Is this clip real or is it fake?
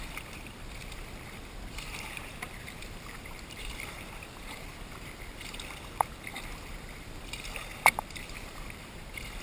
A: fake